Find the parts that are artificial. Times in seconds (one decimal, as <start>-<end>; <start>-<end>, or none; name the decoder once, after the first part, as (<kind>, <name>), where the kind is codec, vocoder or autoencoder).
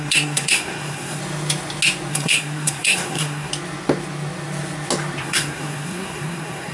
0.0-1.2 (codec, SNAC); 2.1-3.5; 5.2-6.7